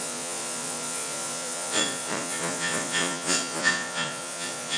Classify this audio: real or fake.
fake